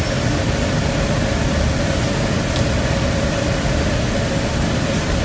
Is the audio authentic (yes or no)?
yes